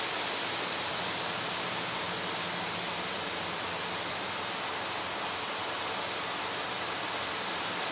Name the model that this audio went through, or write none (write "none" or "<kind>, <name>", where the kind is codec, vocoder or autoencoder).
none